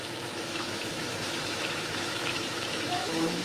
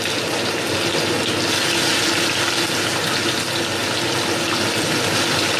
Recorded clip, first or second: second